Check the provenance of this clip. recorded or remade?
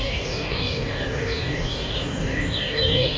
remade